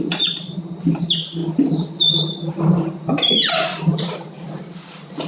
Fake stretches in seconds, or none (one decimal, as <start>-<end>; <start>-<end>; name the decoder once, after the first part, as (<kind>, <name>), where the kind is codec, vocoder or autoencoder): none